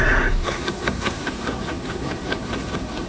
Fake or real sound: fake